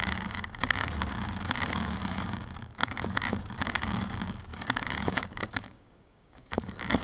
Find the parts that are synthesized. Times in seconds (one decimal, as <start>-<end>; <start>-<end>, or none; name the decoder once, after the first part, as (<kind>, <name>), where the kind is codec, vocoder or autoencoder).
0.0-7.0 (codec, DAC)